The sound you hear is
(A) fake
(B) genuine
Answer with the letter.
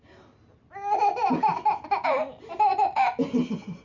B